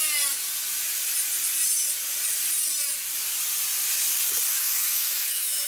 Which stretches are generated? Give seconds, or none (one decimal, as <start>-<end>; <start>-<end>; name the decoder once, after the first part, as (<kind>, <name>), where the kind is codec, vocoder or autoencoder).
4.5-5.7 (autoencoder, DAC-VAE)